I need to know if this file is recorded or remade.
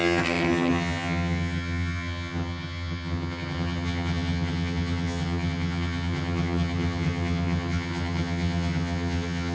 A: remade